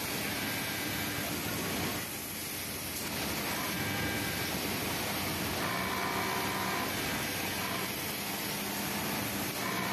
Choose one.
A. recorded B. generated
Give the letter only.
A